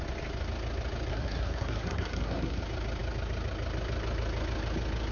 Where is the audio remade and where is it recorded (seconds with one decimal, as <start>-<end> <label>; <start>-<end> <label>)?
0.0-1.1 recorded; 1.1-2.6 remade; 2.6-5.1 recorded